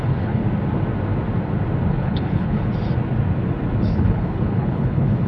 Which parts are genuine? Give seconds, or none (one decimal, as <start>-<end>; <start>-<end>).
0.4-1.9; 2.7-3.8